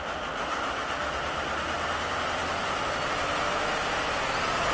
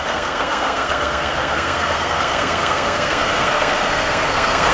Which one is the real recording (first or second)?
first